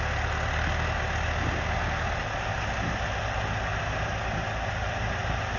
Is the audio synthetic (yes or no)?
no